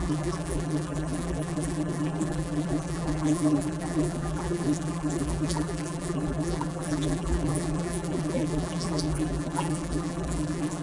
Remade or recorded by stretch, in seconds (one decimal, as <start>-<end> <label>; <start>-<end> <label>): 0.0-10.8 remade